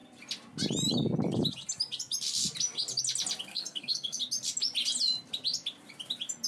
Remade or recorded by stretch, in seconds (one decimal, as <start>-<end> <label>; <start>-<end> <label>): 0.0-3.5 recorded; 3.5-4.2 remade; 4.2-6.5 recorded